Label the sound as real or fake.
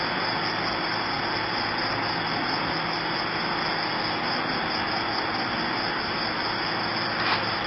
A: real